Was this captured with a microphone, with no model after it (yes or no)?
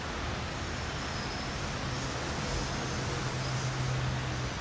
yes